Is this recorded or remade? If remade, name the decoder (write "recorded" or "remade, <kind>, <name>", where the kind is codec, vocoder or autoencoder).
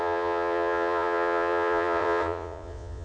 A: remade, vocoder, Vocos